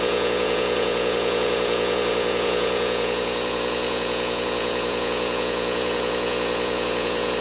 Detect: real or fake fake